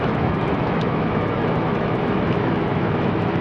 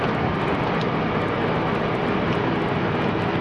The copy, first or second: first